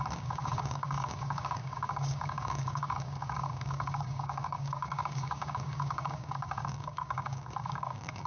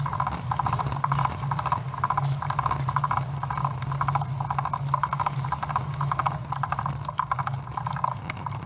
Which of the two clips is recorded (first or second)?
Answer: second